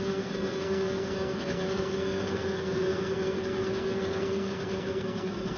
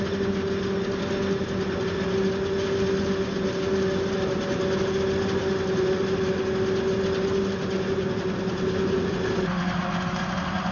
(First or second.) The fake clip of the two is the first